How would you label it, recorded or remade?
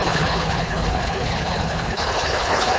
remade